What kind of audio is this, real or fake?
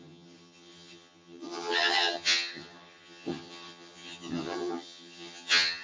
fake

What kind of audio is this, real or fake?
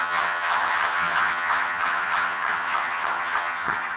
fake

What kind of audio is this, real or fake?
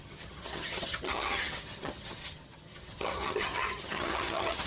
fake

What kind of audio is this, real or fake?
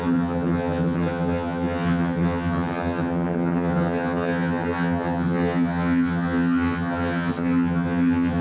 fake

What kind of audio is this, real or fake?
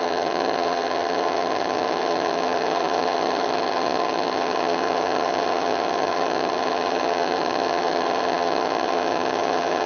fake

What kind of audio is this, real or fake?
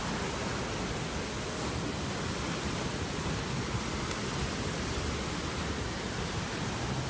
real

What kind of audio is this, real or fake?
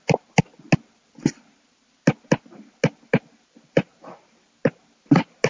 real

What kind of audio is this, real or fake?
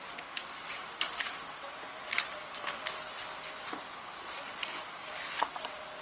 real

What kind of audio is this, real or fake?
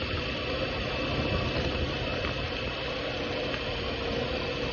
real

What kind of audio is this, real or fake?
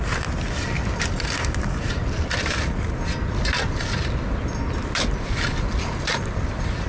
real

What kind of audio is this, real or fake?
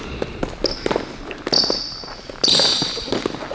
real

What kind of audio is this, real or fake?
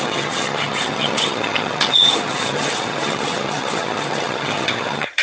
fake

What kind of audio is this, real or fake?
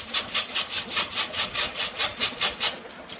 real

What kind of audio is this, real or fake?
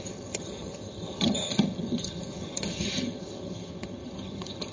fake